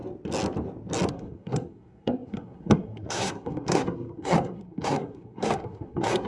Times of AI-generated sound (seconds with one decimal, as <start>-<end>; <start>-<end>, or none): 1.1-6.3